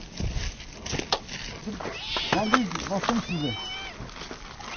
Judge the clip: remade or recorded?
recorded